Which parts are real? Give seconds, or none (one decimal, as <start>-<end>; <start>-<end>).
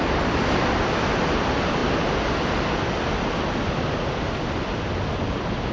0.0-5.7